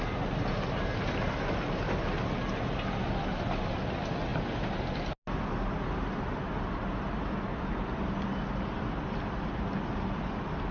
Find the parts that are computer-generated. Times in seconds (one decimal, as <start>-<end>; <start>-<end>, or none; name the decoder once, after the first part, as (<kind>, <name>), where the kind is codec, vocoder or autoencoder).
none